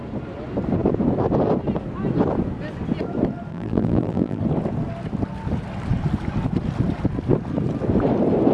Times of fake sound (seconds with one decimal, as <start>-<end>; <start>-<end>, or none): 3.5-4.4